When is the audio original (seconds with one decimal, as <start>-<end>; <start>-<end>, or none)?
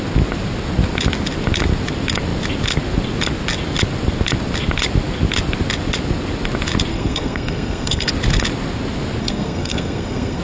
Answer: 0.0-6.9; 8.1-9.2